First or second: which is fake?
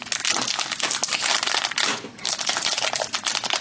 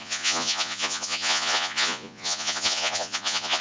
second